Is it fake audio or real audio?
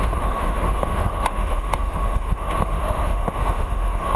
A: fake